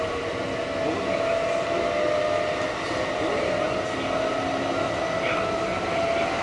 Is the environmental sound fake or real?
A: fake